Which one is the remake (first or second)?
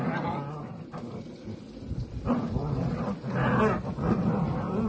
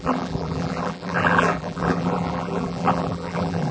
second